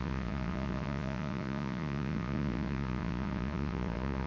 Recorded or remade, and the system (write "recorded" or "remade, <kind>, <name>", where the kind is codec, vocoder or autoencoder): remade, vocoder, Vocos